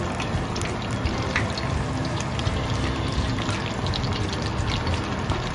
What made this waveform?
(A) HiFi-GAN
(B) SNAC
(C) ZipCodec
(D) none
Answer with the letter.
D